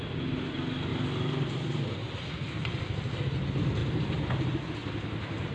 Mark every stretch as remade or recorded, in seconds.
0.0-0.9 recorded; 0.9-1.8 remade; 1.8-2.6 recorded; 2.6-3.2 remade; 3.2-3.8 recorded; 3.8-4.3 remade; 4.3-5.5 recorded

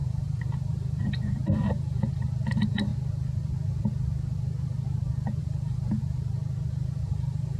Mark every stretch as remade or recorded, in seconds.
0.0-2.9 remade; 2.9-5.4 recorded; 5.4-6.0 remade; 6.0-6.9 recorded; 6.9-7.6 remade